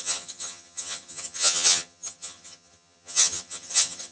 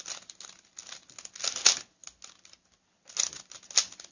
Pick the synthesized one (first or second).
first